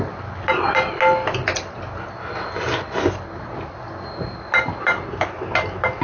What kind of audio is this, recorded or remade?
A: recorded